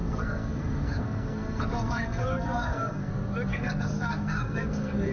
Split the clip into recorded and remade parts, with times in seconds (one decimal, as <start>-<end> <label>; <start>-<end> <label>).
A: 0.0-3.1 remade; 3.1-3.5 recorded; 3.5-5.1 remade